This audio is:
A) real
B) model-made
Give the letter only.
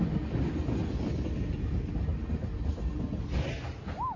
A